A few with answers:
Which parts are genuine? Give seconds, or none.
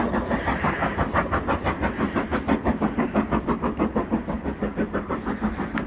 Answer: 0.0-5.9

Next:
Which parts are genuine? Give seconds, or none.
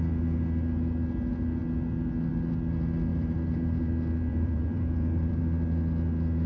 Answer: 0.0-3.1; 3.9-4.3; 5.4-6.5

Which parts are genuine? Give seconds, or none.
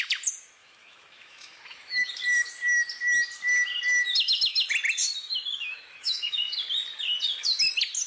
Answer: 0.0-0.6; 2.1-5.2; 6.5-8.1